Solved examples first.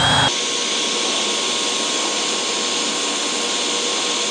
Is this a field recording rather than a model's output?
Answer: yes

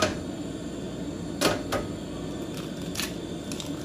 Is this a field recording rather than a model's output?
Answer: yes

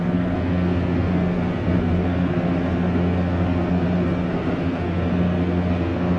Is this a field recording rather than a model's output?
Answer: no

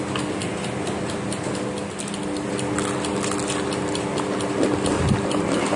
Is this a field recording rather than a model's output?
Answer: yes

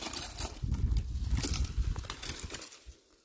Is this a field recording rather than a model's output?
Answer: yes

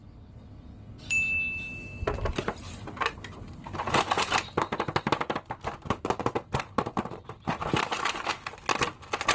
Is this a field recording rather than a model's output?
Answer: yes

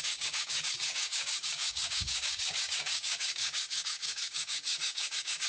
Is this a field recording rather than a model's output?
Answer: no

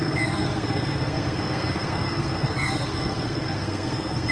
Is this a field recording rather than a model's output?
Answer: no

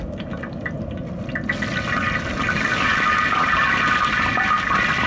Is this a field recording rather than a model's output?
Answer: yes